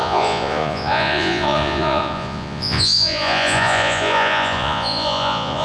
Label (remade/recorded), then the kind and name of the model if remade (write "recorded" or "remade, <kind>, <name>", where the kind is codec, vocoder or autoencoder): remade, vocoder, Vocos